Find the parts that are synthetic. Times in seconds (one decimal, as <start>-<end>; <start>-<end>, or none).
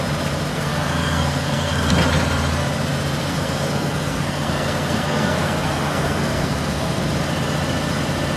0.5-1.9; 3.2-7.0